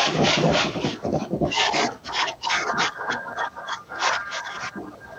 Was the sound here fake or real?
fake